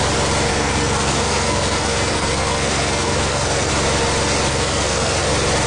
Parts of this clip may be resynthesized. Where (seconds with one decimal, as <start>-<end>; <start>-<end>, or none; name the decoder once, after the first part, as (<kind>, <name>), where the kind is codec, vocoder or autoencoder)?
0.5-3.7 (codec, SNAC); 4.5-5.3